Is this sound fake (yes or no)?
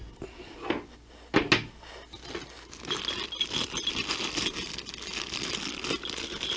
no